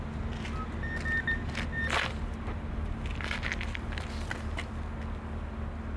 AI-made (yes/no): no